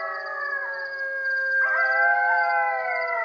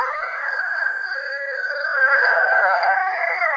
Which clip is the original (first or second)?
first